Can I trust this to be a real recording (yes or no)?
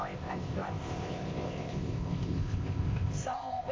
no